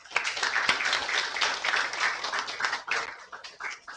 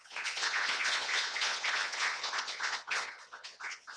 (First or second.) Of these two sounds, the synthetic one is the second